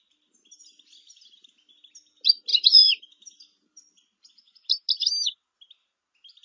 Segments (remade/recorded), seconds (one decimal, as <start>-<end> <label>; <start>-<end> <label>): 0.0-2.5 recorded; 2.5-4.3 remade; 4.3-6.4 recorded